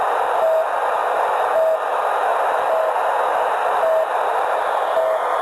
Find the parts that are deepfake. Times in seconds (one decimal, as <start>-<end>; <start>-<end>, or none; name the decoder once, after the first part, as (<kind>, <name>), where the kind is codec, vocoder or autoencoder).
none